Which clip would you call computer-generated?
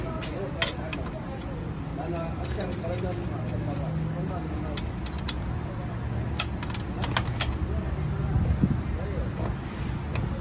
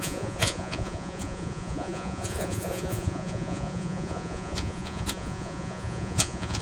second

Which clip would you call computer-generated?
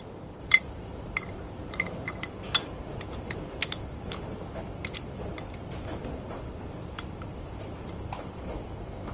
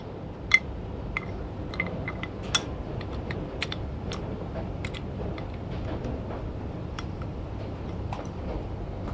first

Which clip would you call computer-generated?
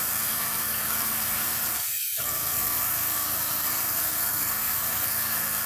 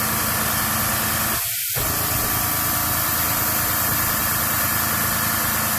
first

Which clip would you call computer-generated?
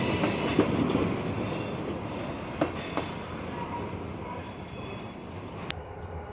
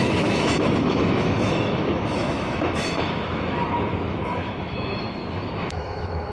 second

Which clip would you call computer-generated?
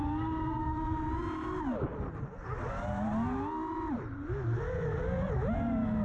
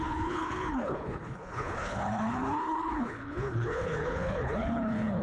second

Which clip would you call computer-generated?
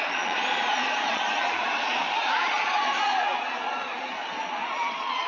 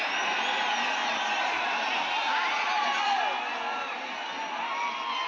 first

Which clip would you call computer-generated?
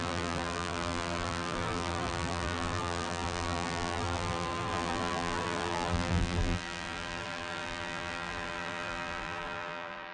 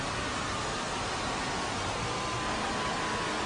first